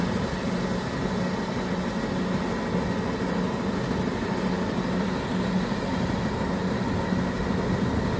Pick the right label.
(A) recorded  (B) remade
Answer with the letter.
A